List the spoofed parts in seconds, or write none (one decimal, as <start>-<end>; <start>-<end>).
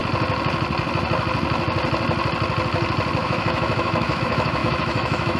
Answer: 3.2-5.4